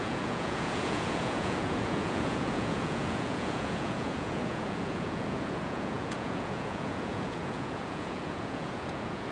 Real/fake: fake